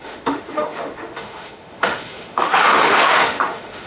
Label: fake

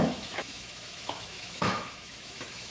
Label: fake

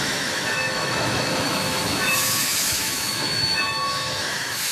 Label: fake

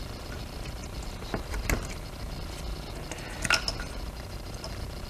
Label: real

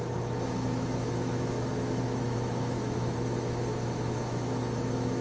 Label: fake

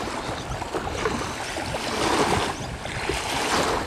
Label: real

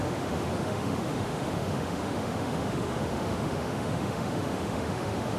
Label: fake